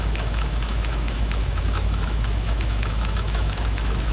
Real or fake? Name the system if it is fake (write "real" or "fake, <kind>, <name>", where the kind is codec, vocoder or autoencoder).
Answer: fake, autoencoder, DAC-VAE